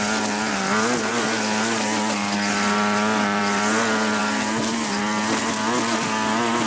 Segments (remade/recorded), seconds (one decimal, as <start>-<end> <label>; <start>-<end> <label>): 0.0-6.7 recorded